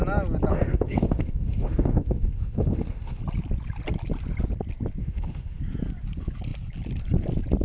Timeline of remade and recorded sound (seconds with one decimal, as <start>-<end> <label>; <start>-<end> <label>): 0.0-0.5 recorded; 0.5-3.2 remade; 3.2-5.0 recorded; 5.0-5.6 remade; 5.6-7.6 recorded